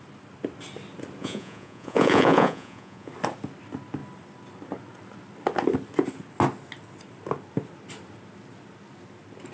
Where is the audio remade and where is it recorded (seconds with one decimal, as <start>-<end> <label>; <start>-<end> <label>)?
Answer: 0.0-1.2 recorded; 1.2-3.1 remade; 3.1-9.5 recorded